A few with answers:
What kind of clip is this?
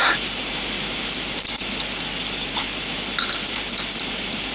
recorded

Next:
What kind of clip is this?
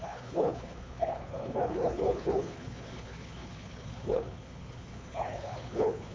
remade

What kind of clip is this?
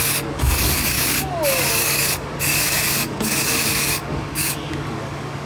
remade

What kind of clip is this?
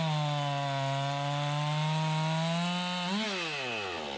recorded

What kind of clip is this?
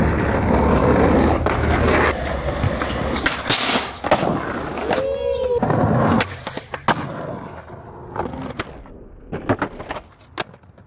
recorded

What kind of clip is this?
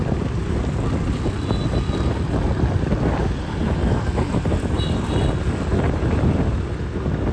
recorded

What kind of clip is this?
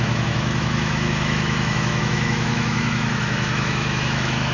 remade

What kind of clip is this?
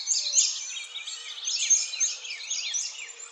recorded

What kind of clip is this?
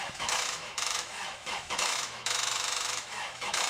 remade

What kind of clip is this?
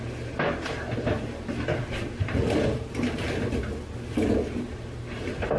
recorded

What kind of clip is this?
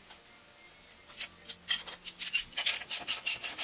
recorded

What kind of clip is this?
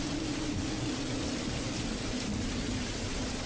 remade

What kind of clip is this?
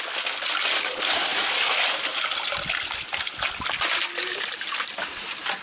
recorded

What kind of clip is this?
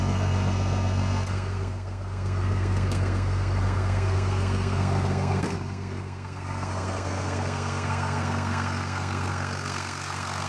remade